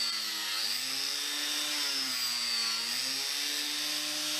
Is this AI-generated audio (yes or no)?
no